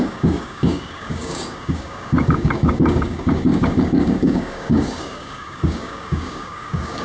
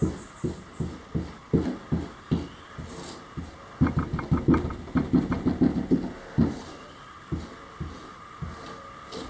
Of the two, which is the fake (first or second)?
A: first